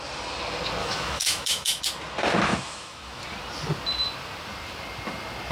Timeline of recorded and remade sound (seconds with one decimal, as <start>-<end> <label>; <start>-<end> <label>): 0.0-0.8 recorded; 0.8-1.8 remade; 1.8-2.5 recorded; 2.5-3.2 remade; 3.2-5.5 recorded